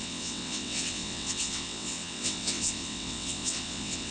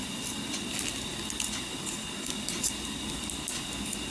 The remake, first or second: first